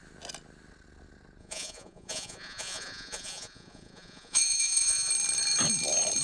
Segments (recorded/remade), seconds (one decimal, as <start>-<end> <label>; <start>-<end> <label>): 0.0-1.4 recorded; 1.4-5.1 remade; 5.1-6.2 recorded